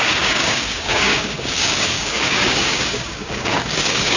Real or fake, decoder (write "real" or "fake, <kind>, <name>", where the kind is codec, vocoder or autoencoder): fake, codec, DAC